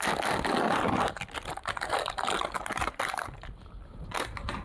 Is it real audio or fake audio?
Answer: real